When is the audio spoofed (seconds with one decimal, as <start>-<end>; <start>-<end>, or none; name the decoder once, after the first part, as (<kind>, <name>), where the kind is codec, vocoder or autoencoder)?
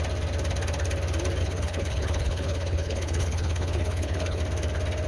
1.4-4.4 (codec, HILCodec)